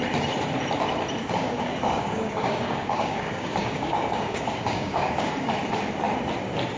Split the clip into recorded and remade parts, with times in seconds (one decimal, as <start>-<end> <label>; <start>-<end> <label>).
0.0-1.2 recorded; 1.2-5.3 remade; 5.3-6.8 recorded